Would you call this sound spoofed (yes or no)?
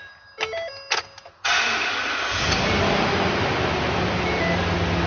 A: no